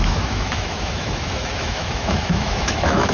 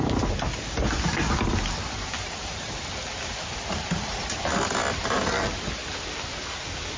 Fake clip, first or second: first